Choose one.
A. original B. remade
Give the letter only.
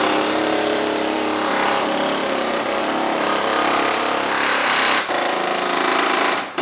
B